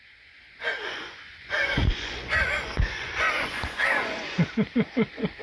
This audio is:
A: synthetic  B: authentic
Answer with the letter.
A